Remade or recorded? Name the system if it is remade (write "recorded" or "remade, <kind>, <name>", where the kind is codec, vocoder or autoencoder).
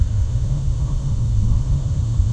remade, autoencoder, DAC-VAE